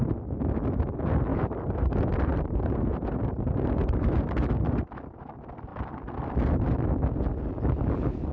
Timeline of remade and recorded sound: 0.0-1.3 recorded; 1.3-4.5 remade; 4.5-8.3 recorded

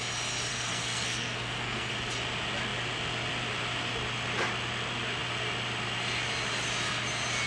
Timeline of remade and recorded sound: 0.0-0.5 recorded; 0.5-1.9 remade; 1.9-7.5 recorded

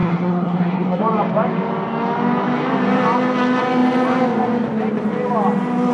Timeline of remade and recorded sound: 0.0-1.0 remade; 1.0-5.9 recorded

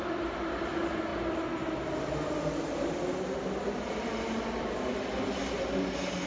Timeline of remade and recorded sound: 0.0-6.3 recorded